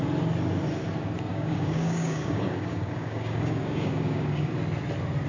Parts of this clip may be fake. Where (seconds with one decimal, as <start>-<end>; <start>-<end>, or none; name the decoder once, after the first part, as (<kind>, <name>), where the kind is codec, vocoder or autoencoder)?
1.3-4.5 (codec, DAC)